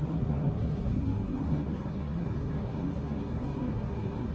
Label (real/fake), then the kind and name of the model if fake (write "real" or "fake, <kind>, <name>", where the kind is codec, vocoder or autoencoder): fake, codec, SNAC